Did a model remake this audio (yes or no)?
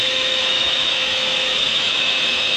yes